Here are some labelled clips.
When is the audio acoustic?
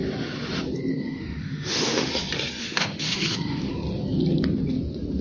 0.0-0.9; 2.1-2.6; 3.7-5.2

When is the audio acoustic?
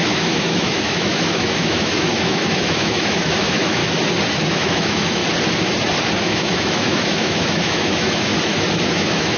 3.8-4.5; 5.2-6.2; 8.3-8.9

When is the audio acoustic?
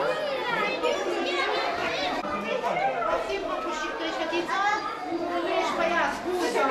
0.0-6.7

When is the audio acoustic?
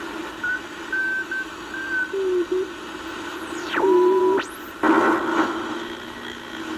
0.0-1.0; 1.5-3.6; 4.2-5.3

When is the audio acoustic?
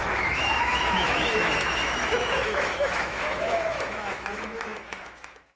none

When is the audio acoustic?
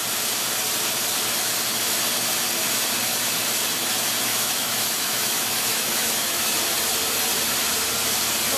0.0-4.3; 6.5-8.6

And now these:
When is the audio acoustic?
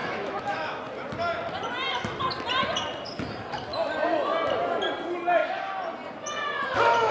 0.8-7.1